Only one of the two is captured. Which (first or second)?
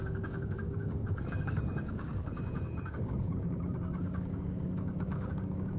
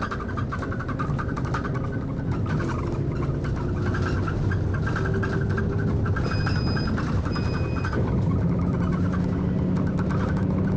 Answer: second